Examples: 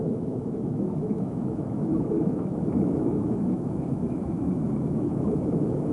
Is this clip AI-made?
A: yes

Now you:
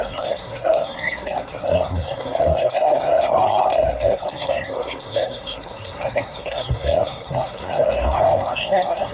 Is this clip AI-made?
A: yes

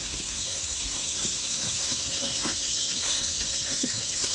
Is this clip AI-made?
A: yes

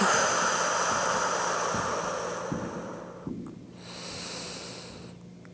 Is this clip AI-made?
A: no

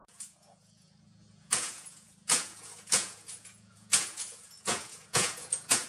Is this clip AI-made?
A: yes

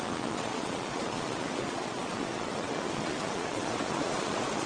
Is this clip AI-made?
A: yes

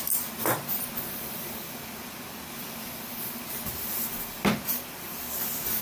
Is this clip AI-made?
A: yes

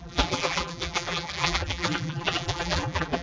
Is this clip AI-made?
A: yes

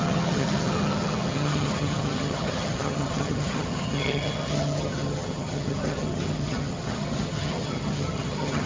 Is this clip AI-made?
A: yes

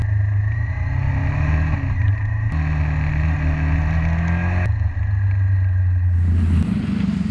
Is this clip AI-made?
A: no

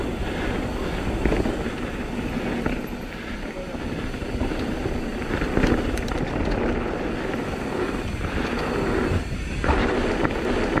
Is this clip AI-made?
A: no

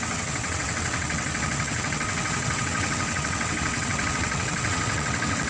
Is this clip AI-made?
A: yes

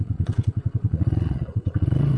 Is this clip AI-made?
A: yes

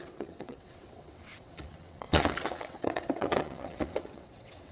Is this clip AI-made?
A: yes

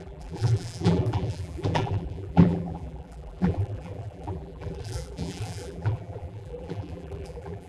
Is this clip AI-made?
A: yes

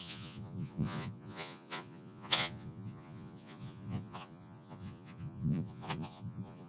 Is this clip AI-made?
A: yes